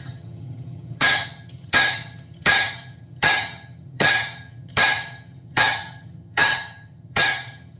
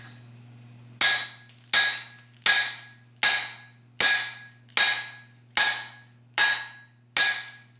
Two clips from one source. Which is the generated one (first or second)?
first